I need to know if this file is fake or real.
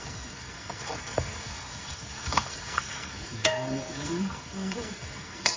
fake